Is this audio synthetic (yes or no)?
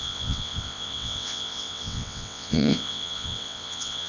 yes